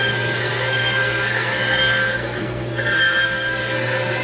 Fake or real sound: fake